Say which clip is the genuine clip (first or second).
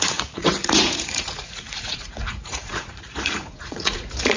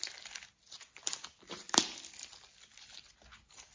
second